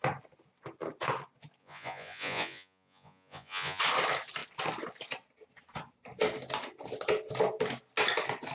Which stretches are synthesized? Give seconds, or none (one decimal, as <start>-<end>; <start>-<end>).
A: 1.6-3.8